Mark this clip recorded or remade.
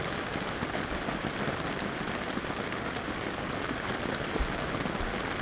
recorded